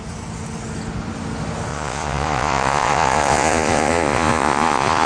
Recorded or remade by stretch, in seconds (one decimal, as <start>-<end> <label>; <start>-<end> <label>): 0.0-1.7 recorded; 1.7-5.1 remade

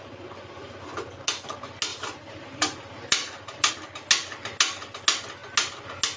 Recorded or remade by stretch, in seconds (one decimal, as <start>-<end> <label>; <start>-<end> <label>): 0.0-1.9 recorded; 1.9-3.7 remade; 3.7-6.2 recorded

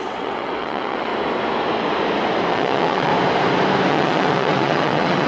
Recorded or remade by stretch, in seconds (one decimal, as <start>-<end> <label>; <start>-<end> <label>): 0.0-1.1 remade; 1.1-2.5 recorded; 2.5-3.1 remade; 3.1-3.9 recorded; 3.9-5.3 remade

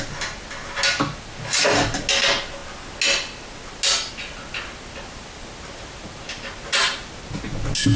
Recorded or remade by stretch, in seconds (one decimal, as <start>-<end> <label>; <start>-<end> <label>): 0.0-8.0 recorded